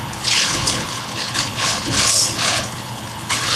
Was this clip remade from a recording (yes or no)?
yes